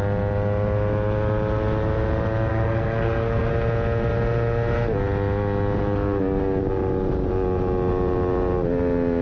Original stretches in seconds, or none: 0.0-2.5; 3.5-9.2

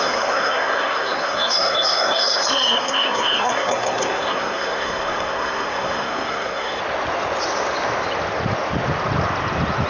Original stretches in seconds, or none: 6.8-9.9

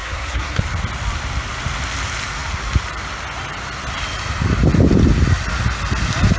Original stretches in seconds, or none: 0.6-6.4

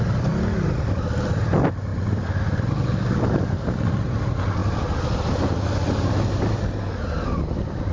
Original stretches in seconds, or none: 0.0-7.9

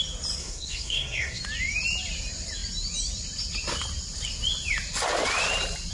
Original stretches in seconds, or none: 0.0-0.4; 1.4-5.9

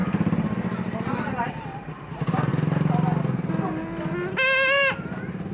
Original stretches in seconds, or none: 0.0-5.5

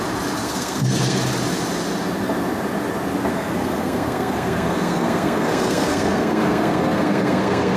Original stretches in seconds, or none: 0.0-0.4; 1.2-3.3